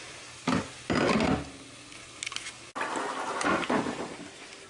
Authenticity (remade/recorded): recorded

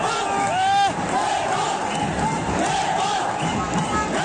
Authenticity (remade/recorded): recorded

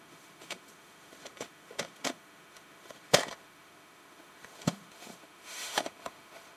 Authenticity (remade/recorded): remade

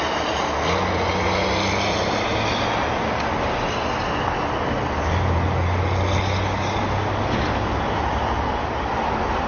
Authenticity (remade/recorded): recorded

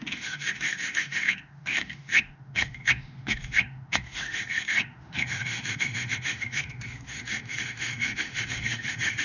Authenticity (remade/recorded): remade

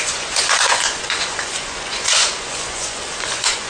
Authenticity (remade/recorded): remade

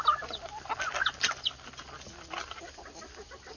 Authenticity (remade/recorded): recorded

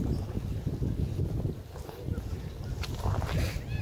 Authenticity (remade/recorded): recorded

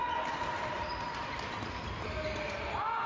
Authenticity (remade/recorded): recorded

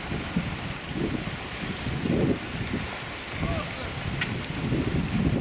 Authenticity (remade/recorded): recorded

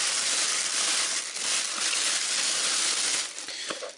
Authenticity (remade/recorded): recorded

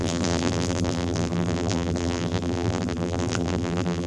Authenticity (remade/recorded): remade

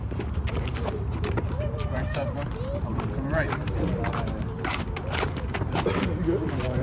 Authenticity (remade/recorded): remade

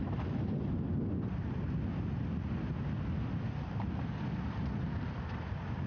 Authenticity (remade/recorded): recorded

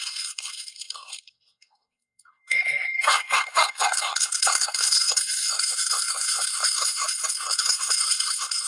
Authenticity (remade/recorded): remade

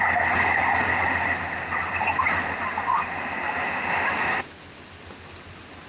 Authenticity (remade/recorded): recorded